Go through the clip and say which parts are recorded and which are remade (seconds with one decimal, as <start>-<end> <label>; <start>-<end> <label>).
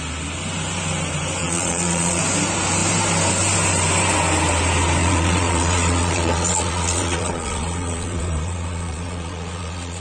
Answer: 0.0-1.4 recorded; 1.4-2.2 remade; 2.2-5.0 recorded; 5.0-10.0 remade